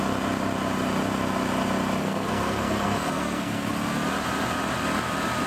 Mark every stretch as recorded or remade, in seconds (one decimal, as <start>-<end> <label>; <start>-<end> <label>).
0.0-2.0 recorded; 2.0-3.7 remade; 3.7-5.5 recorded